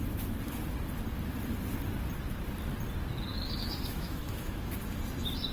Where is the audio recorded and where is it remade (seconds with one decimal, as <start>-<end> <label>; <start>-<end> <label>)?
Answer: 0.0-3.3 recorded; 3.3-4.6 remade; 4.6-5.5 recorded